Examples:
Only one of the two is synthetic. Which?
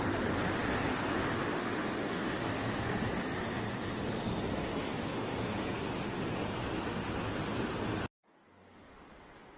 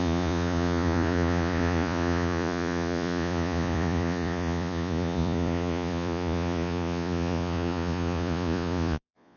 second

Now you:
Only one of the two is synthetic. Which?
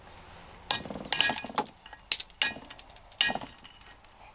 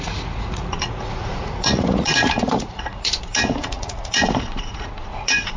second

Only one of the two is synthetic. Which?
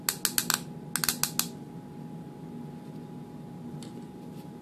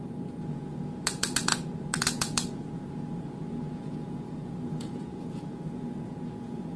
second